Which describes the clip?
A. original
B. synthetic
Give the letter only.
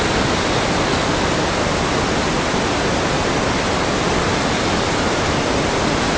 A